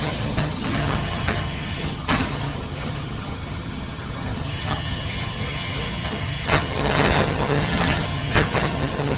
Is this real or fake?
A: fake